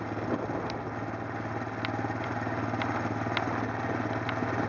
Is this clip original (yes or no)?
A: yes